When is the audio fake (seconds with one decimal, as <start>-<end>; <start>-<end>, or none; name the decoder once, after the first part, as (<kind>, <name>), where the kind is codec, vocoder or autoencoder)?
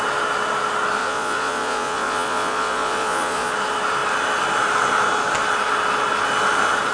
1.0-3.5 (vocoder, Vocos)